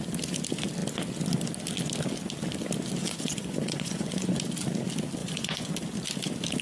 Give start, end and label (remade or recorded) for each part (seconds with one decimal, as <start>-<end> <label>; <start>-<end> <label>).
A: 0.0-3.0 recorded; 3.0-4.4 remade; 4.4-5.2 recorded; 5.2-5.7 remade; 5.7-6.6 recorded